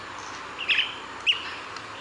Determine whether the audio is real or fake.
real